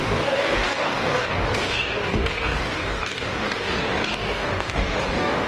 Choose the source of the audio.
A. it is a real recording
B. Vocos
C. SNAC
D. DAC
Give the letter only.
D